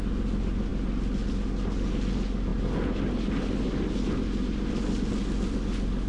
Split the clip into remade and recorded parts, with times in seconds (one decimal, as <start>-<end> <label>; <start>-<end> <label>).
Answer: 0.0-6.1 recorded